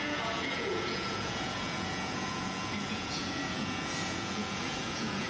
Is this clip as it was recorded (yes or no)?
no